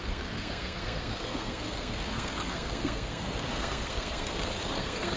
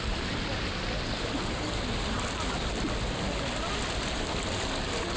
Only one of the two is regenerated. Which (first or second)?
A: first